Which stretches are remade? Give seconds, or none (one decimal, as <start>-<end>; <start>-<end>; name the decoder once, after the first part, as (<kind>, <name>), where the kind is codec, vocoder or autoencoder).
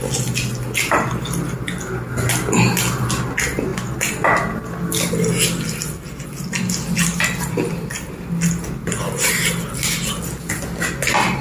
none